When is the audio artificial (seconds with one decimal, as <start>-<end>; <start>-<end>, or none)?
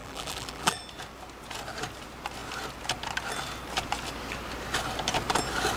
0.0-0.8